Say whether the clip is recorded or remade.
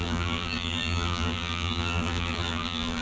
remade